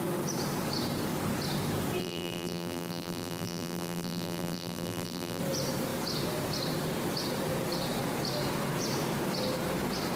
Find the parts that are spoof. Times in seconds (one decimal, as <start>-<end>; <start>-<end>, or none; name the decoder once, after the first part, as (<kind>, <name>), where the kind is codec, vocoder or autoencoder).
2.0-5.4 (vocoder, BigVGAN v2)